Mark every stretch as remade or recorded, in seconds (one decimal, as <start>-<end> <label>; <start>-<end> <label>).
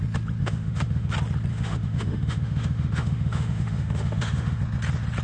0.0-0.4 recorded; 0.4-1.1 remade; 1.1-1.5 recorded; 1.5-4.6 remade; 4.6-5.2 recorded